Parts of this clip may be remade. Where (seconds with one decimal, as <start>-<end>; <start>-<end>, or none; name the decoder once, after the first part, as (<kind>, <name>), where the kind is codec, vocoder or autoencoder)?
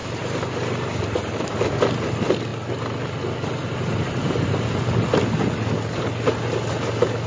0.0-1.7 (vocoder, BigVGAN v2); 3.9-4.7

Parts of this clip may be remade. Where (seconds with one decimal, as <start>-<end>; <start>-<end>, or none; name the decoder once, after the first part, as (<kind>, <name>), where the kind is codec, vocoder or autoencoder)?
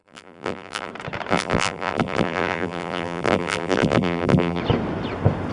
0.0-0.9 (vocoder, BigVGAN v2); 1.3-4.6